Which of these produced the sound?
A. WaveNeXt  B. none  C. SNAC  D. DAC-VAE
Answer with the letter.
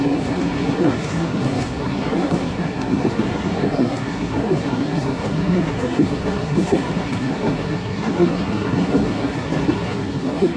C